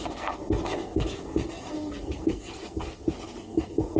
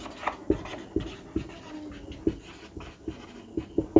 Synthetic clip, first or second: first